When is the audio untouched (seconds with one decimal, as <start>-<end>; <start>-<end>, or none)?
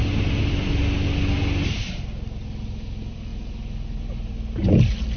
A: 0.0-5.2